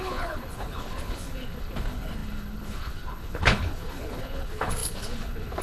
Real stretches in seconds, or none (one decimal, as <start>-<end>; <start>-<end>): none

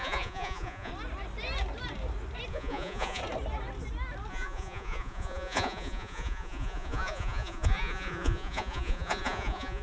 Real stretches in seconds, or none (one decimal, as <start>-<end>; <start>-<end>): 0.9-2.5; 3.2-4.3

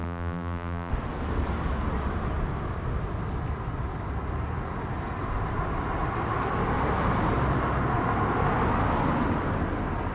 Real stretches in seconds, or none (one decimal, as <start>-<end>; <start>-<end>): 0.9-10.1

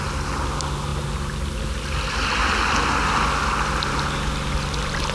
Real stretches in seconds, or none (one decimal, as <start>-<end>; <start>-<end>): 0.0-5.1

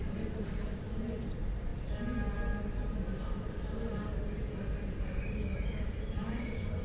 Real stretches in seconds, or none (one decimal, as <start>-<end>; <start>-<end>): 1.7-5.8

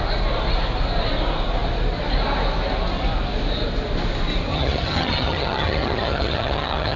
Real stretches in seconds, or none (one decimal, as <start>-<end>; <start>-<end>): 0.0-4.5

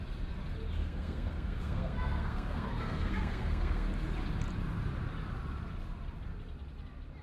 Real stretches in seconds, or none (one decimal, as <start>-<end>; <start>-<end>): 0.0-0.8; 3.9-7.2